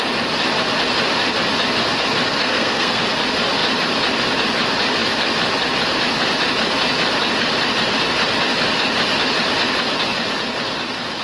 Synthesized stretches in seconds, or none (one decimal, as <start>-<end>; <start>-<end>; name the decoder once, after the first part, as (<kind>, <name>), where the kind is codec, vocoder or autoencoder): 2.4-3.0 (codec, SNAC)